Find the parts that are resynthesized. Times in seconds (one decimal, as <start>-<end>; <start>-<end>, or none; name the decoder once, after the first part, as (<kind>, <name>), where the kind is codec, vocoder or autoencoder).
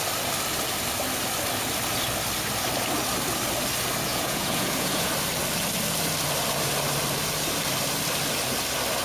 4.1-5.1 (vocoder, Vocos)